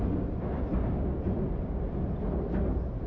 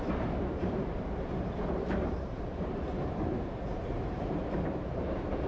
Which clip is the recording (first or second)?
first